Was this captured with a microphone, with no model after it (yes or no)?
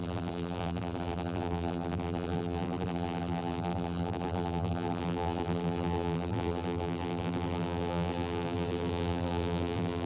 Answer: no